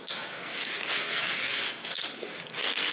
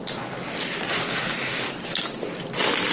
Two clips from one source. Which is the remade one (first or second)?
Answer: first